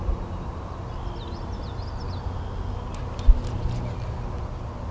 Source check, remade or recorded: recorded